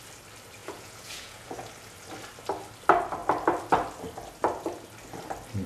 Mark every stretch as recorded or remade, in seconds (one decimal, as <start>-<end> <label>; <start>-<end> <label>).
0.0-0.6 recorded; 0.6-1.7 remade; 1.7-5.7 recorded